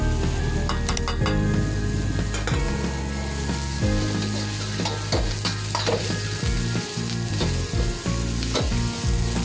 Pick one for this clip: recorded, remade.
recorded